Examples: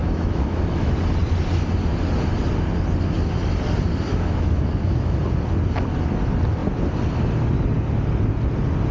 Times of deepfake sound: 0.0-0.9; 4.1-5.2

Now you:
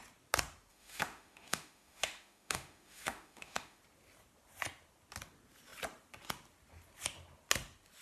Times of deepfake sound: 0.7-3.8

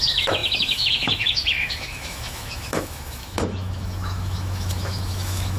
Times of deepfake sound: 0.0-5.6

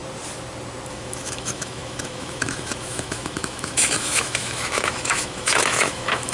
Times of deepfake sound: 0.9-6.3

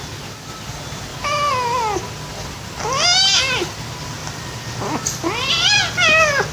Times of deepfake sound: none

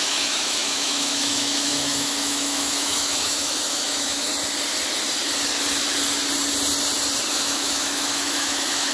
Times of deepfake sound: 0.0-4.3; 7.3-8.9